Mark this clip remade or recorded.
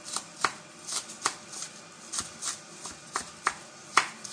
recorded